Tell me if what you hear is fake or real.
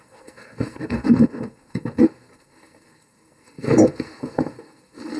fake